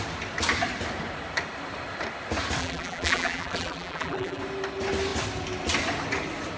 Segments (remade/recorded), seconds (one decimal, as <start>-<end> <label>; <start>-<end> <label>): 0.0-2.6 recorded; 2.6-4.4 remade; 4.4-6.6 recorded